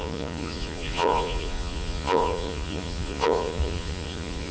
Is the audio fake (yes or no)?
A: yes